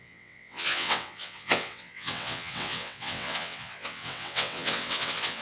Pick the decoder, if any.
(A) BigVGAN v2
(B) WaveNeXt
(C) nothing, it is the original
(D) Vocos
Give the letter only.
B